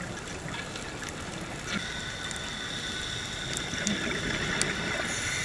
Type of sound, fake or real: real